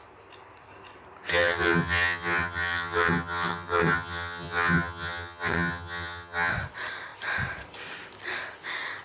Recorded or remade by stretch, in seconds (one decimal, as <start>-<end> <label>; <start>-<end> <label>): 0.0-1.3 recorded; 1.3-6.5 remade; 6.5-9.0 recorded